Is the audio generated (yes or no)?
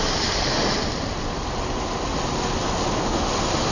no